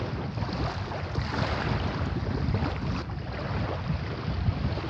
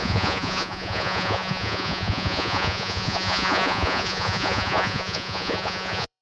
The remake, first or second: second